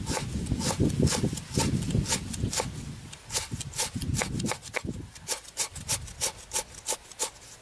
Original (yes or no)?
yes